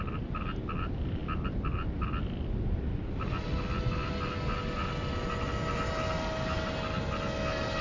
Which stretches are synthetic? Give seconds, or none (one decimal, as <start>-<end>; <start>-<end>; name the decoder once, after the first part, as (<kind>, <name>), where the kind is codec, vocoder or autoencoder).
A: none